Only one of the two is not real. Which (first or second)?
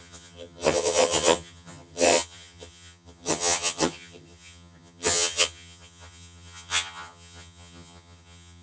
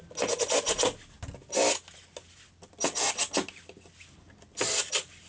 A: first